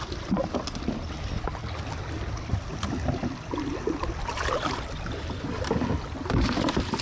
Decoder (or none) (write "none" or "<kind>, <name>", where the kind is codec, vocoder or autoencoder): none